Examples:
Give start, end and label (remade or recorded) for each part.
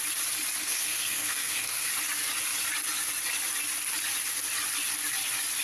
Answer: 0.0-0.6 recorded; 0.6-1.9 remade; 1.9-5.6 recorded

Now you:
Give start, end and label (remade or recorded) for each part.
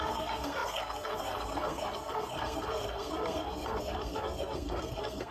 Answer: 0.0-5.3 remade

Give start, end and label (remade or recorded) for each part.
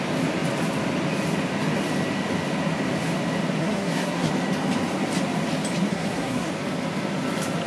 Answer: 0.0-3.6 recorded; 3.6-4.3 remade; 4.3-5.9 recorded; 5.9-6.5 remade; 6.5-7.7 recorded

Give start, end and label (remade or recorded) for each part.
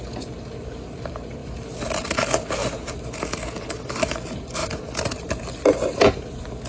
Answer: 0.0-6.7 recorded